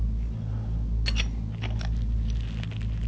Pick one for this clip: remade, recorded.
recorded